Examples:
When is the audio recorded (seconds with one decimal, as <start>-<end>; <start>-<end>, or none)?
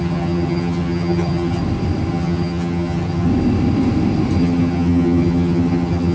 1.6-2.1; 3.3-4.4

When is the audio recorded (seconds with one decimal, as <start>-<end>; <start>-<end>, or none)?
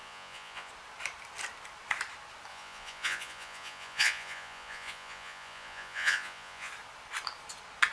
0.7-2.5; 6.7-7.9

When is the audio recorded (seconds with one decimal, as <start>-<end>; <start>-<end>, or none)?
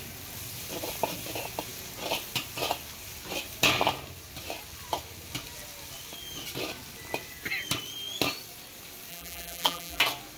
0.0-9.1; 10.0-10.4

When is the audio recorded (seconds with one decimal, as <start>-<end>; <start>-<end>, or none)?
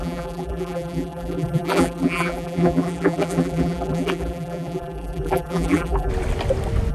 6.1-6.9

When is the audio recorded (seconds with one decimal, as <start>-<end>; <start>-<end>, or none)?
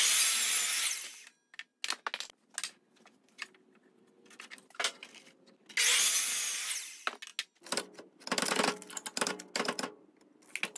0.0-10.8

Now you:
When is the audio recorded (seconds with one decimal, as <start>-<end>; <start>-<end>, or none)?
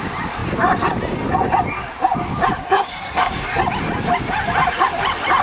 0.0-2.6; 3.3-5.4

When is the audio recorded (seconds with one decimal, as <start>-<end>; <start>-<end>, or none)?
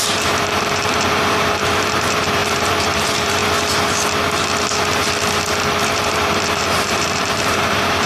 3.4-5.8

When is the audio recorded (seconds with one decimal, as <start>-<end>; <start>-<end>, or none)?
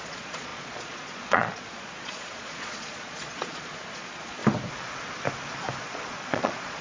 4.4-5.8